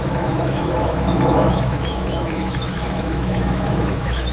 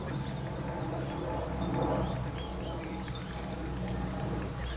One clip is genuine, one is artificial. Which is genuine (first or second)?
second